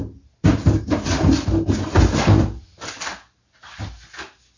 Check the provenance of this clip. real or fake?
real